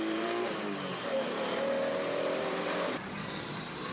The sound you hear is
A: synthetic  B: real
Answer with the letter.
A